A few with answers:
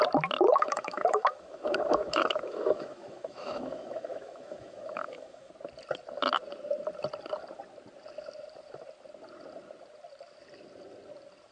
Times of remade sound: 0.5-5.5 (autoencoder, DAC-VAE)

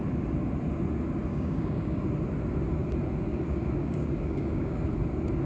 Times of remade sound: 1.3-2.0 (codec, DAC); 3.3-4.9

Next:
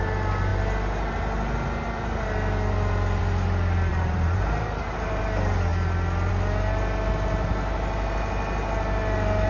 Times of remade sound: 3.9-5.2 (vocoder, BigVGAN v2)

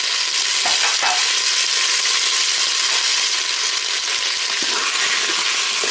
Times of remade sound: none

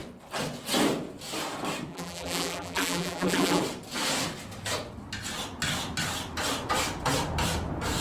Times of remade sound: 1.9-3.6 (vocoder, BigVGAN v2)